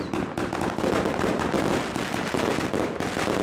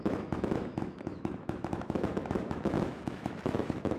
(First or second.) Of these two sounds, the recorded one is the first